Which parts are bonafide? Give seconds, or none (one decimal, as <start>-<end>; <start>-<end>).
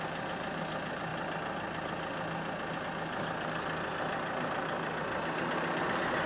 0.0-6.3